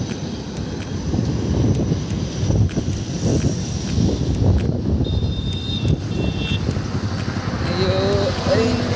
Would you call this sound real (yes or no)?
yes